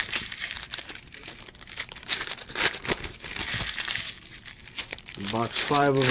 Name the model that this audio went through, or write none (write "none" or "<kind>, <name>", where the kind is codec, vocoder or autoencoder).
vocoder, BigVGAN v2